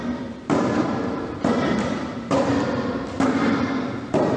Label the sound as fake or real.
fake